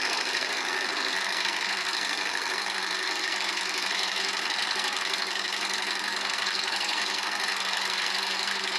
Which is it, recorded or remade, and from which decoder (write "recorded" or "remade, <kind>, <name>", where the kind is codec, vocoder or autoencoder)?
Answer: remade, codec, SNAC